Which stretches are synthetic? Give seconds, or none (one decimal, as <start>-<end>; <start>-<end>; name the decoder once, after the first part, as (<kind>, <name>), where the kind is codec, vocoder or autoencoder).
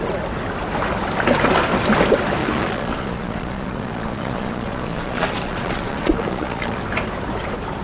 2.4-6.8 (vocoder, Vocos)